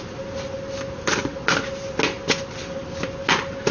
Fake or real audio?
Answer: real